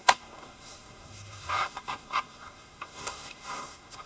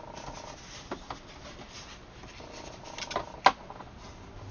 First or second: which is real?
second